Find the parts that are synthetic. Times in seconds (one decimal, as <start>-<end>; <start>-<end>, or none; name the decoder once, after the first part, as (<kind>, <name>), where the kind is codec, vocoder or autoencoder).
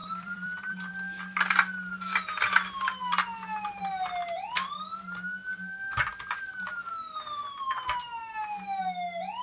0.0-0.9 (vocoder, BigVGAN v2)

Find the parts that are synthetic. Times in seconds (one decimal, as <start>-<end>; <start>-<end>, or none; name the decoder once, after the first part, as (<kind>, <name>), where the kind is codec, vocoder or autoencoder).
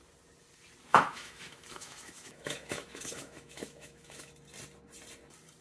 0.9-4.3 (autoencoder, DAC-VAE)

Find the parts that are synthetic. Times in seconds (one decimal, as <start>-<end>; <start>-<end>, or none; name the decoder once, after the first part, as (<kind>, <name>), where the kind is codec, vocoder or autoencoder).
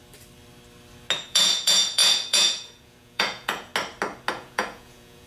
1.3-3.7 (vocoder, Vocos); 4.3-5.3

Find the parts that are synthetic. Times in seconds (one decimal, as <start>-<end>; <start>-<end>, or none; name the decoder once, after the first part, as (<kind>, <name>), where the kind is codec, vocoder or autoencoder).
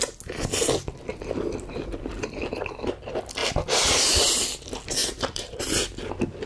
3.4-4.3 (vocoder, BigVGAN v2); 5.0-5.6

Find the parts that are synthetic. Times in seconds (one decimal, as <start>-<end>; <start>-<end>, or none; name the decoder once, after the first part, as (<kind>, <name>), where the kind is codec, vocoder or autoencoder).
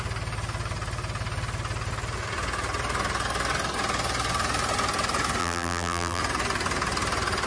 5.4-6.2 (vocoder, BigVGAN v2)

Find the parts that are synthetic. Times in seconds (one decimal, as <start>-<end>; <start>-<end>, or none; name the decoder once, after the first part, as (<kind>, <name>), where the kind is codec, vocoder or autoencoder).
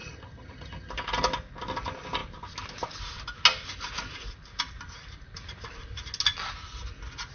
0.0-0.9 (vocoder, HiFi-GAN)